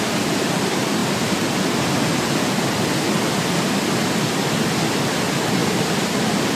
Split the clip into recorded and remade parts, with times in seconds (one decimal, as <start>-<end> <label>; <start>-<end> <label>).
0.0-6.6 recorded